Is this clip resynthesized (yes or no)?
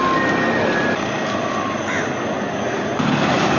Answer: no